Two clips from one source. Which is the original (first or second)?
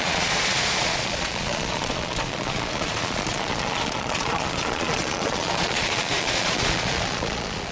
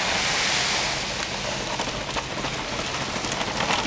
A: second